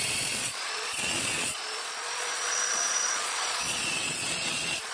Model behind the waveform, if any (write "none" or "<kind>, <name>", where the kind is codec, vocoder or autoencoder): vocoder, Vocos